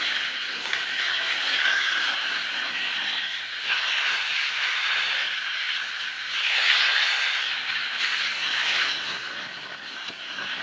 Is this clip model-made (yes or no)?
yes